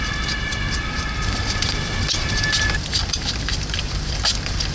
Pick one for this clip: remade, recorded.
remade